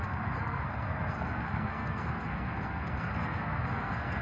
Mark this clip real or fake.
fake